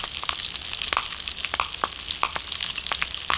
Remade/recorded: recorded